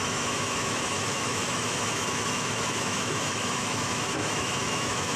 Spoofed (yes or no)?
yes